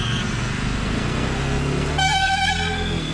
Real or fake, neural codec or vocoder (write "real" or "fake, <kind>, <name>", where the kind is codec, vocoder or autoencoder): fake, codec, SNAC